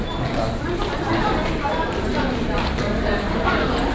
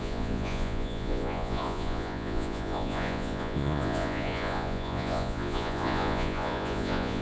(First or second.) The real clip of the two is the first